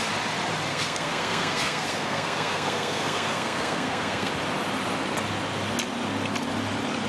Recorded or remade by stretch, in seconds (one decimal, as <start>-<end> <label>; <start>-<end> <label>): 0.0-0.7 recorded; 0.7-4.3 remade; 4.3-7.1 recorded